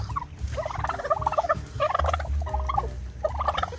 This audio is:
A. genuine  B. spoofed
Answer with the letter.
A